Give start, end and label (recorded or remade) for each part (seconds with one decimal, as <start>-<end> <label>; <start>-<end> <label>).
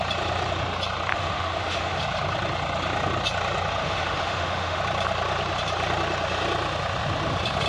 0.0-1.1 recorded; 1.1-2.0 remade; 2.0-3.8 recorded; 3.8-4.8 remade; 4.8-7.7 recorded